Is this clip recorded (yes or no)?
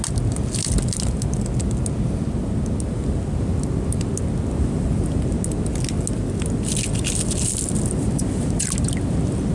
yes